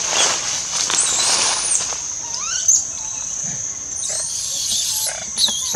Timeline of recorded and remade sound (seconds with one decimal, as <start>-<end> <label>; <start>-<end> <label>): 0.0-5.8 recorded